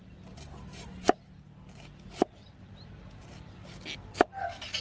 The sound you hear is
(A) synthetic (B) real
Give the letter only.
B